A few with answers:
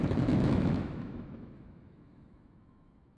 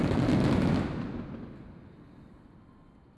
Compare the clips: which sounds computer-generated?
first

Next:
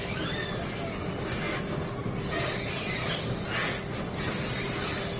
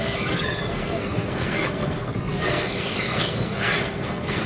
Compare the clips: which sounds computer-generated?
second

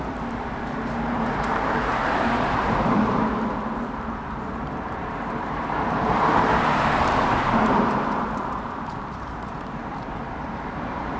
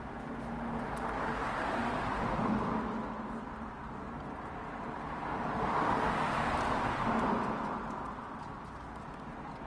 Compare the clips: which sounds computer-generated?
first